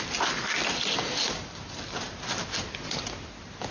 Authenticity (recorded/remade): recorded